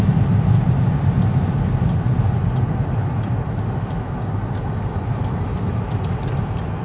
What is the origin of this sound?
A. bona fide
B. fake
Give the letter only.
A